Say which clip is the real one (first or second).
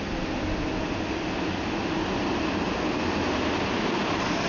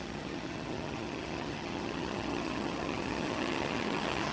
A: first